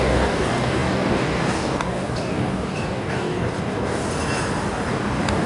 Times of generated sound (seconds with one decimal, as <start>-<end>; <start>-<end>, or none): 0.0-4.0; 4.9-5.5